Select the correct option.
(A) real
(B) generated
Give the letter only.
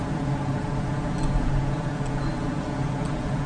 A